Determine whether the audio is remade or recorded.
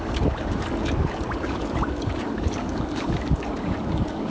remade